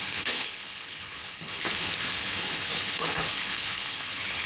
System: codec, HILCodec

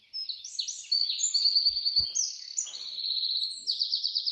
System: none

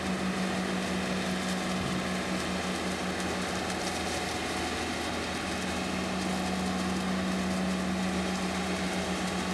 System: none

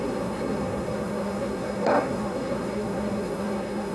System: codec, SNAC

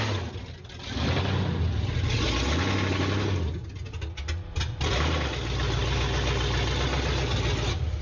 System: none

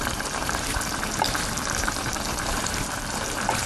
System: vocoder, BigVGAN v2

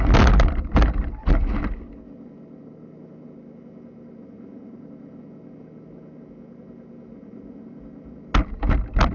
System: none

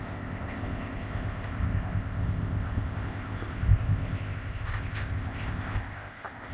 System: codec, ZipCodec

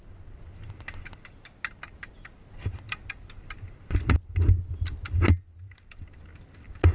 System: none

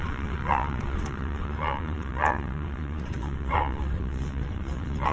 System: vocoder, WaveNeXt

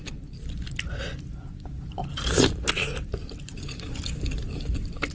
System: none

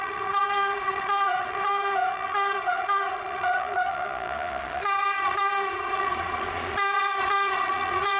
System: vocoder, Vocos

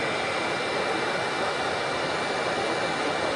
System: none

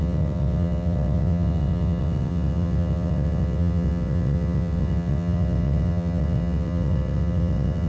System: vocoder, WaveNeXt